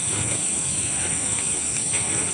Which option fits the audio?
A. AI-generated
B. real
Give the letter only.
A